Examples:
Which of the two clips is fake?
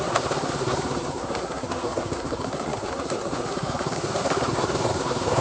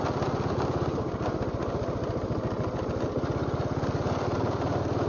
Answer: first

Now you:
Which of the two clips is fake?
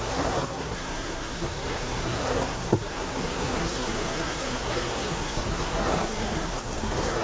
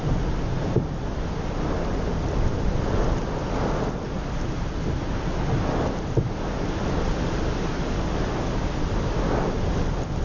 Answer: first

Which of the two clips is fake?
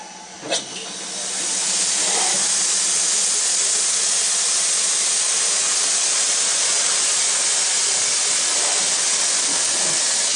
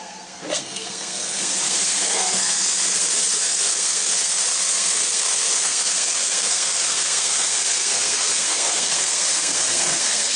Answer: second